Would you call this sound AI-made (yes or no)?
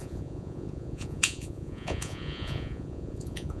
yes